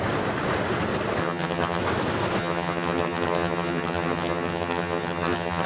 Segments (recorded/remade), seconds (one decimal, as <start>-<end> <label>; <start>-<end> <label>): 0.0-1.2 recorded; 1.2-1.8 remade; 1.8-2.4 recorded; 2.4-5.7 remade